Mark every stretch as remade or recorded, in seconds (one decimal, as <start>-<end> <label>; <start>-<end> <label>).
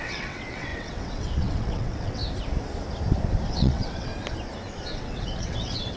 0.0-2.2 remade; 2.2-3.5 recorded; 3.5-4.1 remade; 4.1-5.0 recorded; 5.0-6.0 remade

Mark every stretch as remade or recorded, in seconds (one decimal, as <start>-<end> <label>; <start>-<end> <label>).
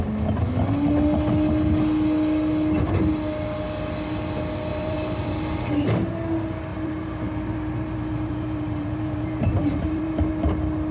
0.0-4.7 recorded; 4.7-5.7 remade; 5.7-6.7 recorded; 6.7-10.3 remade; 10.3-10.9 recorded